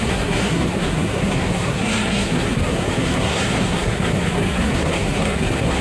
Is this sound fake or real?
fake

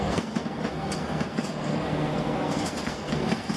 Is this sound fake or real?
fake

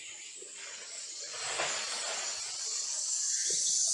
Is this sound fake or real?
real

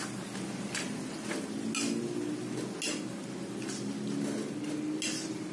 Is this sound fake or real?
real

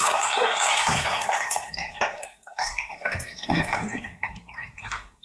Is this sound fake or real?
fake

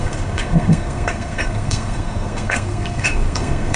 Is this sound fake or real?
fake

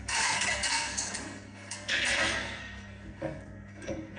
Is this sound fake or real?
fake